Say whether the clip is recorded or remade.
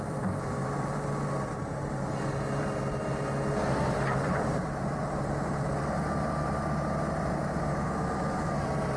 remade